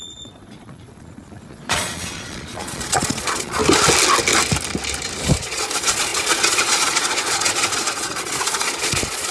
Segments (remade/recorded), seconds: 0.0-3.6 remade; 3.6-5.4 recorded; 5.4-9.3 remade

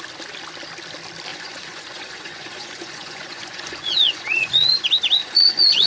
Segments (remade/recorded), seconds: 0.0-1.3 recorded; 1.3-4.8 remade; 4.8-5.2 recorded; 5.2-5.9 remade